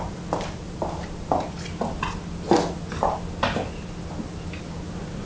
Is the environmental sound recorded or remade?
recorded